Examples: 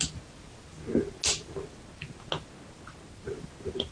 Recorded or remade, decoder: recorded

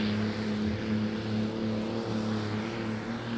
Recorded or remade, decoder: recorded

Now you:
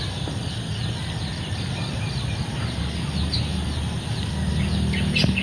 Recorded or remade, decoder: recorded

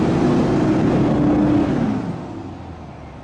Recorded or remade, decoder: recorded